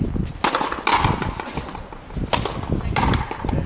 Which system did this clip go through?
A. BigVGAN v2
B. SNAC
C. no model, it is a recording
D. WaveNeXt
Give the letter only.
C